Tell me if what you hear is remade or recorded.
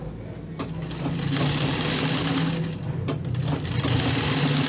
recorded